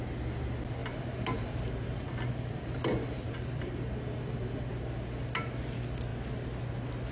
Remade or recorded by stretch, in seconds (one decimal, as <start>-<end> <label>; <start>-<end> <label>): 0.0-0.8 recorded; 0.8-4.7 remade; 4.7-7.1 recorded